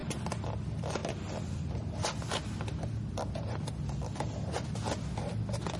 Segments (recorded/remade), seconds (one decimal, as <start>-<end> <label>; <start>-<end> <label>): 0.0-5.8 recorded